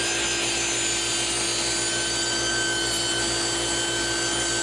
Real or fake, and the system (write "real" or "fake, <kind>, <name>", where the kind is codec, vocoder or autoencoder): real